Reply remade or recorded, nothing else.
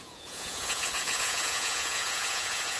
remade